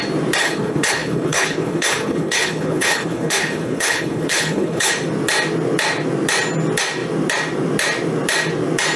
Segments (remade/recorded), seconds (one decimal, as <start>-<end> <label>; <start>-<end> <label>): 0.0-0.4 recorded; 0.4-4.9 remade; 4.9-9.0 recorded